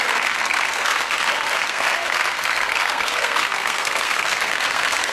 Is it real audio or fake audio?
fake